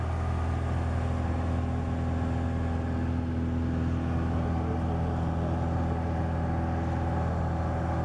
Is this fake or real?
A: real